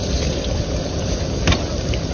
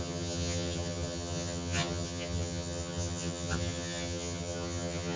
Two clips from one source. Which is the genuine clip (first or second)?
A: first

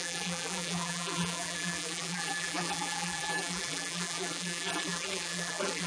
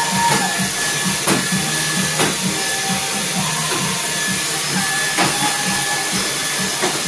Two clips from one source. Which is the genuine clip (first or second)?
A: second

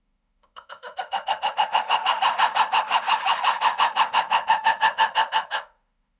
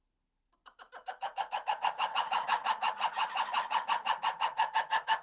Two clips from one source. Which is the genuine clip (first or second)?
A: second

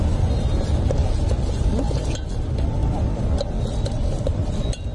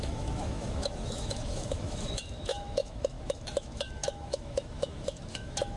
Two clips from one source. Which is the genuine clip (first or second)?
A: first